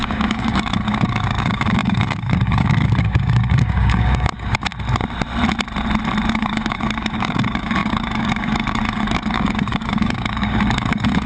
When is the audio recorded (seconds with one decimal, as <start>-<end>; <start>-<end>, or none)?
4.7-6.3